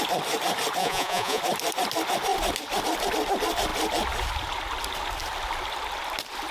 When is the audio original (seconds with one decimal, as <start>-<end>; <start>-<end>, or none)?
0.0-0.8; 1.4-6.5